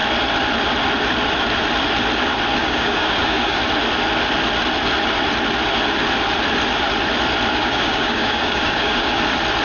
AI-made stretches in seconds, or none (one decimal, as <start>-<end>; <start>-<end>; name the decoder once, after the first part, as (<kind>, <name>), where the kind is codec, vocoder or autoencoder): 2.6-3.6 (codec, DAC); 7.5-9.2